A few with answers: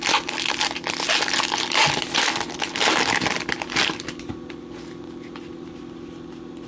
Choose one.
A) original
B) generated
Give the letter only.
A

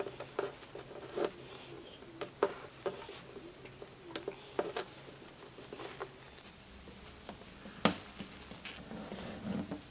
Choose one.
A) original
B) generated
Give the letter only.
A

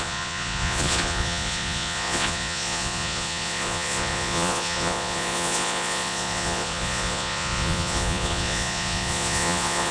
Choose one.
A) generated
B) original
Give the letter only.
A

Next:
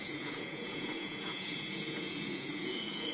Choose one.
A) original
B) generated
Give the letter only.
B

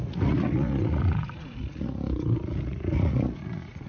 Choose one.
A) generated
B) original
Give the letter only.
A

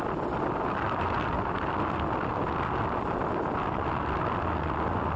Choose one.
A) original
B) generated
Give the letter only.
A